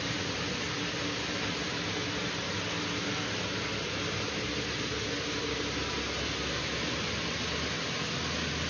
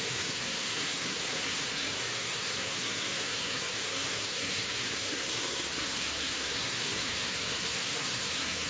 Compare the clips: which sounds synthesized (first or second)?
second